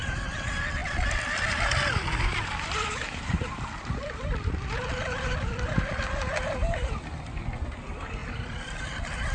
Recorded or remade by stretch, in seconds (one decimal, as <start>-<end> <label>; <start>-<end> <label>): 0.0-0.8 recorded; 0.8-5.8 remade; 5.8-6.6 recorded; 6.6-7.4 remade; 7.4-8.2 recorded; 8.2-8.8 remade; 8.8-9.3 recorded